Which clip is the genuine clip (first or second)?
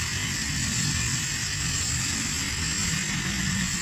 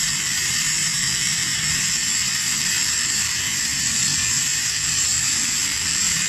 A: first